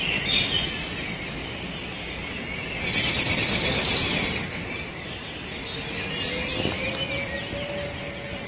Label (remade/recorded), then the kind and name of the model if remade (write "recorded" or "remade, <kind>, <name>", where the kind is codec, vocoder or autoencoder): recorded